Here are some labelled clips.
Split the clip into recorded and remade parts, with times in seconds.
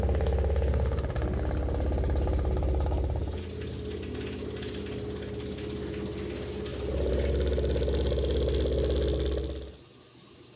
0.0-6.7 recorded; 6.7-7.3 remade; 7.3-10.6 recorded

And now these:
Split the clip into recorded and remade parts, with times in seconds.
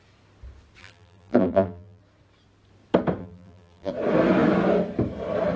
0.0-0.8 recorded; 0.8-2.0 remade; 2.0-3.2 recorded; 3.2-3.9 remade; 3.9-5.6 recorded